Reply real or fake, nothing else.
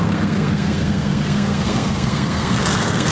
fake